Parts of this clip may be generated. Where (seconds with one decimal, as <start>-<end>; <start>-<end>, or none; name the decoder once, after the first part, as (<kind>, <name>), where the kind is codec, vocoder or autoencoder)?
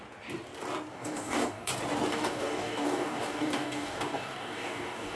0.9-1.7 (codec, DAC); 2.1-5.2